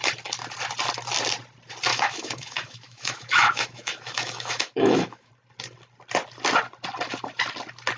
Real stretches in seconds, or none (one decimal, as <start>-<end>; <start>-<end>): 0.0-1.9; 5.3-8.0